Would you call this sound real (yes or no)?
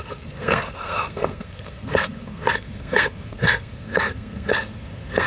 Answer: no